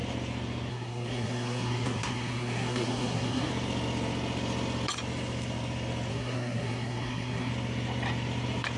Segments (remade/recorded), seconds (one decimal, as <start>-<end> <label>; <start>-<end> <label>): 0.0-0.7 recorded; 0.7-3.5 remade; 3.5-6.1 recorded; 6.1-7.5 remade; 7.5-8.8 recorded